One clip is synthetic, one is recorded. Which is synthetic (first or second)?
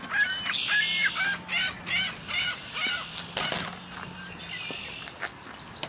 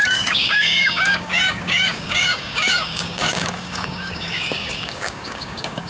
second